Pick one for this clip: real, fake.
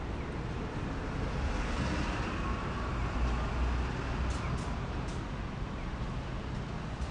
real